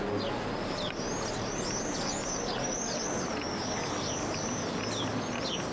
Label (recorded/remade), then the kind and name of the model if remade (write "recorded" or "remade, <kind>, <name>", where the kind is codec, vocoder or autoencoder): recorded